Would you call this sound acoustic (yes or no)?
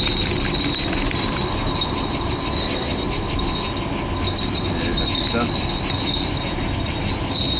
yes